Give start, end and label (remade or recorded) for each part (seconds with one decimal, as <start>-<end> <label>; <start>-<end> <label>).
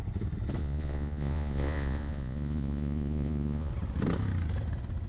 0.0-0.6 recorded; 0.6-3.7 remade; 3.7-5.1 recorded